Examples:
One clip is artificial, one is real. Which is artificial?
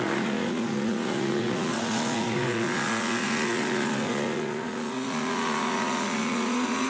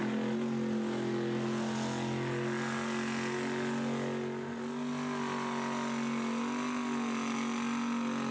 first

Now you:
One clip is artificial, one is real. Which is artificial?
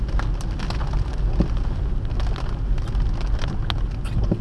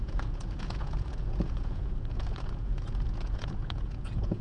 second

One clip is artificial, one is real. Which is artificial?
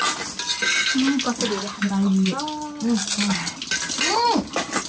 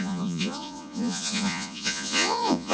second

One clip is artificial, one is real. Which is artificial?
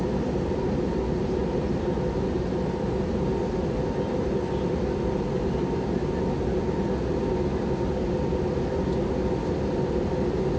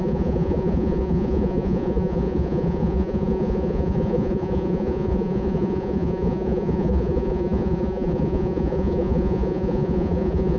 second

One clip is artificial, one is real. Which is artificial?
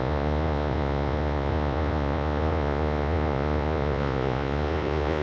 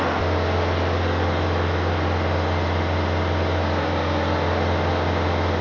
first